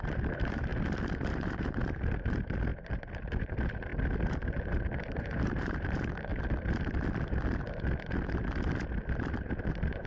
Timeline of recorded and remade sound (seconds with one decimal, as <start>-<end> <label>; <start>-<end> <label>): 0.0-0.7 remade; 0.7-1.3 recorded; 1.3-2.7 remade; 2.7-3.3 recorded; 3.3-3.9 remade; 3.9-4.7 recorded; 4.7-6.3 remade; 6.3-9.7 recorded; 9.7-10.1 remade